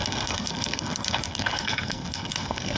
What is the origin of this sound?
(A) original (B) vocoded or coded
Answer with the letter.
B